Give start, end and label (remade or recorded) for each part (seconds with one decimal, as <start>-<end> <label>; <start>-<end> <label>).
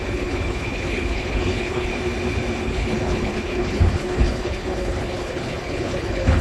0.0-1.9 remade; 1.9-2.6 recorded; 2.6-6.4 remade